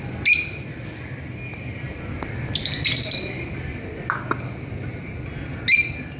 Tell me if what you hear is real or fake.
real